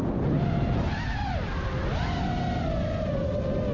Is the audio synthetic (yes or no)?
no